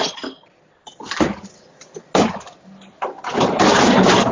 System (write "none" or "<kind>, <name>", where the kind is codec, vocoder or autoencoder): none